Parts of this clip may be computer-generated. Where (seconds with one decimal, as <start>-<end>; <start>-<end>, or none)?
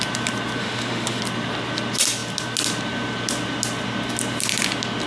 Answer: 0.6-1.2